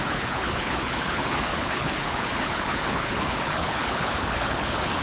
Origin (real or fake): fake